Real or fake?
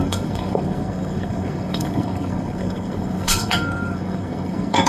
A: fake